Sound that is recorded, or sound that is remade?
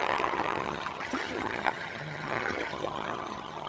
remade